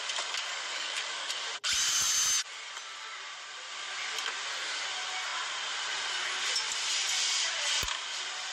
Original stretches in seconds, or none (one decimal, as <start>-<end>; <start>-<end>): 0.0-0.5; 1.3-8.5

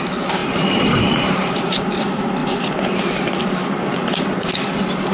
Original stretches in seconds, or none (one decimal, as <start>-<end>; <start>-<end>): 0.0-0.4; 2.0-3.9; 4.5-5.1

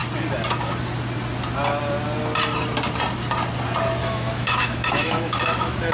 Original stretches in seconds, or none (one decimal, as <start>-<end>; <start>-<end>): 0.0-4.0

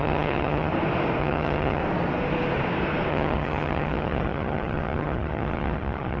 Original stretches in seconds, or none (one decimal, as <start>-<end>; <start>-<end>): 0.7-1.2; 1.8-3.1

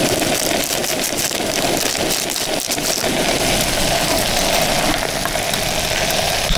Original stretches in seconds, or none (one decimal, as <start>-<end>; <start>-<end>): 0.0-6.6

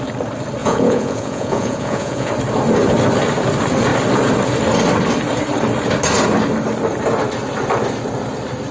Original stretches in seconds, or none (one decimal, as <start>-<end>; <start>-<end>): 0.0-0.6; 2.3-8.7